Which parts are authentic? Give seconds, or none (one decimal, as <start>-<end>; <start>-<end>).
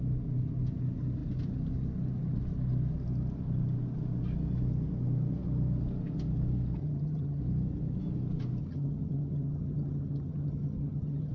0.0-6.8; 7.4-8.6